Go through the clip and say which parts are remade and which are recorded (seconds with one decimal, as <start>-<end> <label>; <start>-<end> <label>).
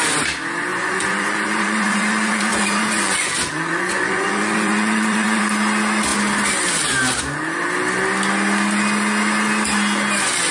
0.0-0.7 recorded; 0.7-5.4 remade; 5.4-10.5 recorded